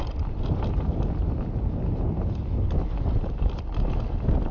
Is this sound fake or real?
real